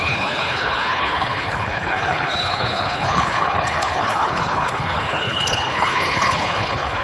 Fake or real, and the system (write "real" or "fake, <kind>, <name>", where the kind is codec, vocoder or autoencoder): fake, codec, HILCodec